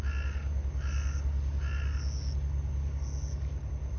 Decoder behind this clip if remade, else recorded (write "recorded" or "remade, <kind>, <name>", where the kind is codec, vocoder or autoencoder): recorded